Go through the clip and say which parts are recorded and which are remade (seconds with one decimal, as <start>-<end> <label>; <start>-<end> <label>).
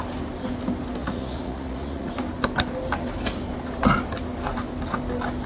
0.0-1.0 recorded; 1.0-2.1 remade; 2.1-5.5 recorded